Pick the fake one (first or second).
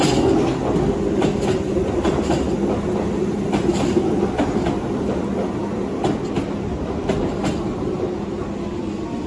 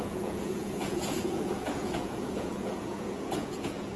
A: second